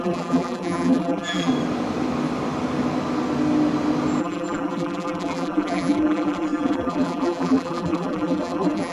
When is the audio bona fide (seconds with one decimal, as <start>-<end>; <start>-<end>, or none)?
1.5-4.2